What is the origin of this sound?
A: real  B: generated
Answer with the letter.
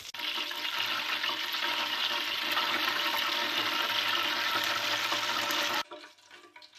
A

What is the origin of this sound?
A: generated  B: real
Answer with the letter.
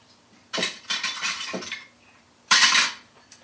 A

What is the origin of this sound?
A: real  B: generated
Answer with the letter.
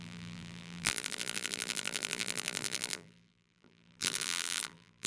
B